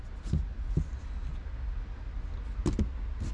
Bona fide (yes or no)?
yes